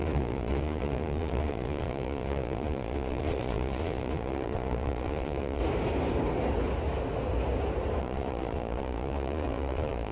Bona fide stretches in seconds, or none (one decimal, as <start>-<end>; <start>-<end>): 5.6-8.0

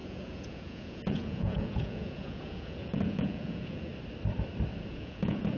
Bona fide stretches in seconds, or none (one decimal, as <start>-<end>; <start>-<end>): 3.9-4.9

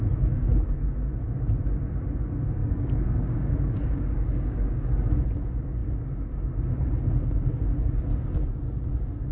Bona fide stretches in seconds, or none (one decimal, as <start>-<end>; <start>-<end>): 0.0-2.6; 4.9-9.3

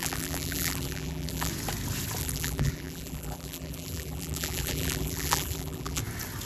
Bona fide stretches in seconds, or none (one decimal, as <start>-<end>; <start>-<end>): 1.5-2.2; 6.0-6.5

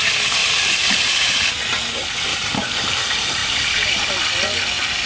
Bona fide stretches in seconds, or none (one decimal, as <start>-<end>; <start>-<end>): 0.0-0.4; 1.5-2.3; 2.9-3.4; 4.0-5.1

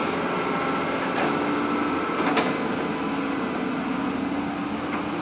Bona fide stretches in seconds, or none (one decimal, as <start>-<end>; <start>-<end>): 0.0-5.2

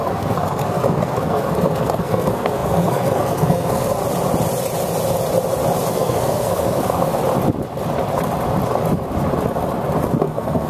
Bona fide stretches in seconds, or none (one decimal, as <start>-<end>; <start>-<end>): 4.0-5.9; 7.2-10.2

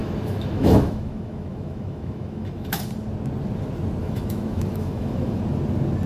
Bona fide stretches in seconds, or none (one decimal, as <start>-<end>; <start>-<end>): 2.8-4.0; 5.4-6.1